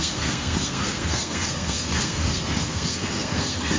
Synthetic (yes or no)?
yes